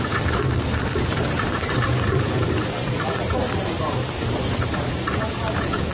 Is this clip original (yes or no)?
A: no